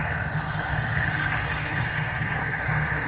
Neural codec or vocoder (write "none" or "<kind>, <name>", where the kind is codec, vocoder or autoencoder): codec, SNAC